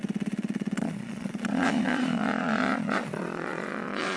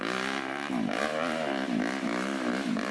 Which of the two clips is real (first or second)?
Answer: second